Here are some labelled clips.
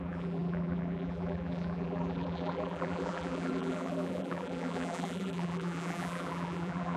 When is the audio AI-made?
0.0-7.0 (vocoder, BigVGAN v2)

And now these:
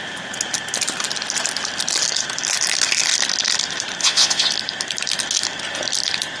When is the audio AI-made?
4.0-4.5 (vocoder, Vocos)

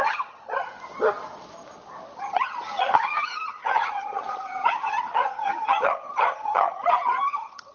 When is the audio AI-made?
0.0-0.7 (vocoder, HiFi-GAN); 2.2-7.7

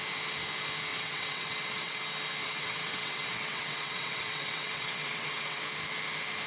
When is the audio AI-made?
0.9-2.0 (vocoder, WaveNeXt); 2.4-5.6

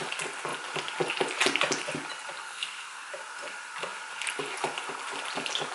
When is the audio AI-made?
2.4-3.1 (codec, SNAC)

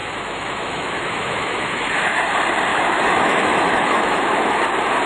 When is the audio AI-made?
0.0-2.2 (autoencoder, DAC-VAE); 2.7-4.2